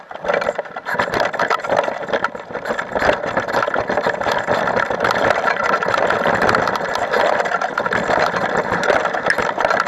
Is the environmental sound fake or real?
real